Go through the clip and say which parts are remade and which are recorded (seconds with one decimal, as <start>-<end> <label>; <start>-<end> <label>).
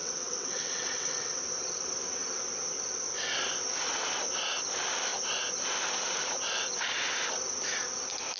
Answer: 0.0-1.4 remade; 1.4-8.4 recorded